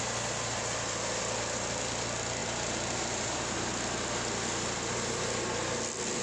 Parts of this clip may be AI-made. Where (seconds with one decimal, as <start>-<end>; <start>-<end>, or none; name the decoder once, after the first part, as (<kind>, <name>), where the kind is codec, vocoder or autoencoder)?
2.4-3.7 (vocoder, BigVGAN v2)